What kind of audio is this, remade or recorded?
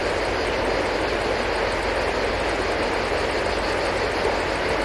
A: recorded